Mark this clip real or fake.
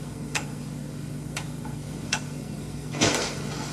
fake